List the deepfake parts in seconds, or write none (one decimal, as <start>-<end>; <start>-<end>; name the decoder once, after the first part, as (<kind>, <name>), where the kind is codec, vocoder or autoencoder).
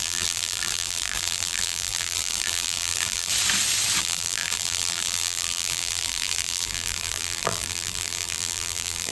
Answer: 0.0-3.3 (vocoder, BigVGAN v2); 4.0-9.1